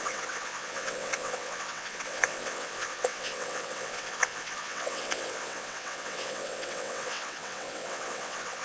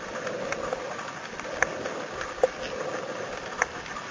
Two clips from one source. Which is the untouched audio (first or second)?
second